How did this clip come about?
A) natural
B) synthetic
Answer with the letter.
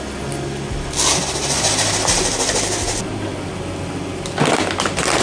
A